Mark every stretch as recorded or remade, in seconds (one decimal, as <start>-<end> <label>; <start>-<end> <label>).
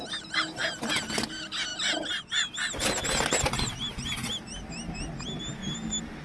0.0-6.2 recorded